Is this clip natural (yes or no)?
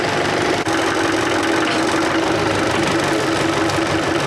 no